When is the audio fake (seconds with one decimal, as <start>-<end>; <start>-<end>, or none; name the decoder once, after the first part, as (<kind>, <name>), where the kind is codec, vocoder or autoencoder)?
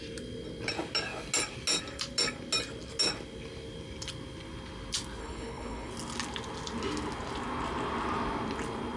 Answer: 5.2-5.9 (codec, HILCodec)